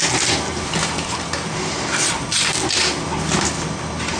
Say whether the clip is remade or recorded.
recorded